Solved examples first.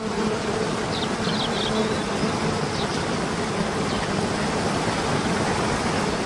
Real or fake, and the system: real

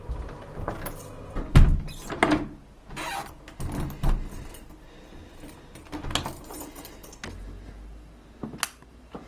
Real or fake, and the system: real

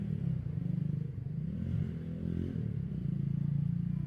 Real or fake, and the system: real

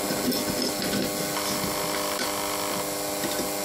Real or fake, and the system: real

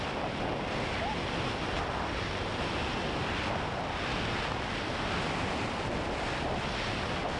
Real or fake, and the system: real